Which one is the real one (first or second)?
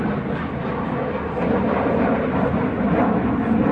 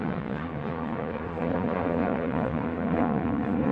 first